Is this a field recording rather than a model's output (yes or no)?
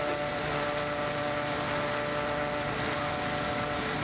yes